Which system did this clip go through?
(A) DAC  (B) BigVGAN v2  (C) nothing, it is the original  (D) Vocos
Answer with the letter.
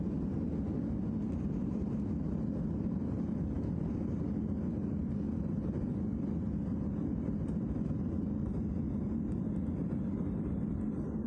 C